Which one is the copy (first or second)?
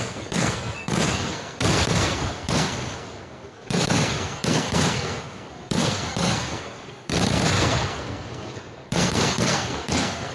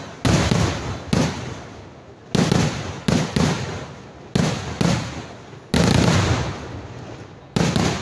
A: first